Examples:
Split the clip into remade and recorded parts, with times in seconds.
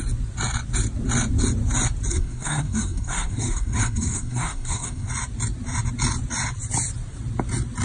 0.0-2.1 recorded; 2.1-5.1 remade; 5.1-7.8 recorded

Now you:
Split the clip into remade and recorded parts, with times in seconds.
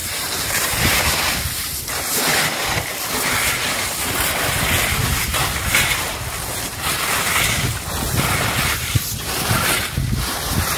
0.0-1.1 remade; 1.1-10.8 recorded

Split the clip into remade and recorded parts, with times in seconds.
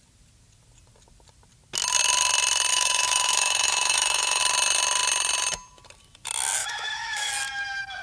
0.0-2.7 recorded; 2.7-4.4 remade; 4.4-6.6 recorded; 6.6-7.3 remade; 7.3-8.0 recorded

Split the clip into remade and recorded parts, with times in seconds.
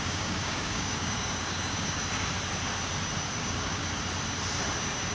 0.0-2.0 remade; 2.0-3.4 recorded; 3.4-3.8 remade; 3.8-5.1 recorded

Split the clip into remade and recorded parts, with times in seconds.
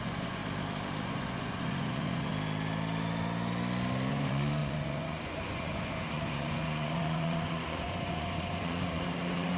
0.0-0.4 remade; 0.4-1.0 recorded; 1.0-2.3 remade; 2.3-4.1 recorded; 4.1-9.6 remade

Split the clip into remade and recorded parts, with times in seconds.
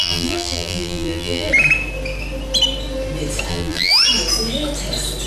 0.0-1.5 remade; 1.5-3.5 recorded; 3.5-3.9 remade; 3.9-5.3 recorded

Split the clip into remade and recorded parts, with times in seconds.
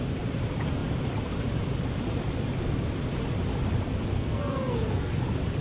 0.0-4.1 recorded; 4.1-5.1 remade; 5.1-5.6 recorded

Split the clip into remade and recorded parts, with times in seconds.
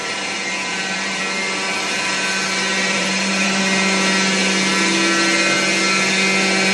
0.0-1.2 remade; 1.2-2.7 recorded; 2.7-3.6 remade; 3.6-6.7 recorded